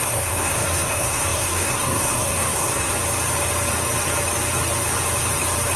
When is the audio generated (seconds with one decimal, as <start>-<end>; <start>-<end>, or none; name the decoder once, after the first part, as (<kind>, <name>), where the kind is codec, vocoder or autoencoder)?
0.0-2.9 (codec, SNAC)